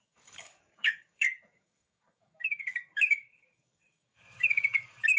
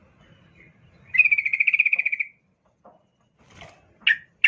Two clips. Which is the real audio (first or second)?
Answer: second